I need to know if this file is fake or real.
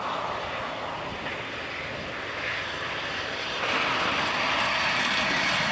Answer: real